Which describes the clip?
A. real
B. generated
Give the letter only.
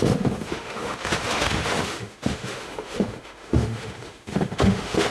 B